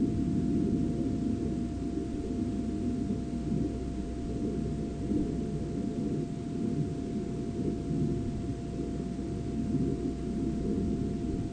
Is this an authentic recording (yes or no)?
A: yes